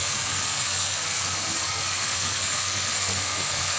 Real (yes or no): no